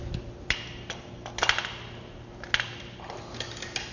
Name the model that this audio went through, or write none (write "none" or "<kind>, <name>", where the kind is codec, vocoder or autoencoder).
none